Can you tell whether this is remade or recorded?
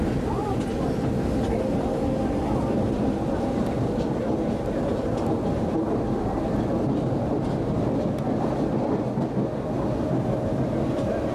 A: recorded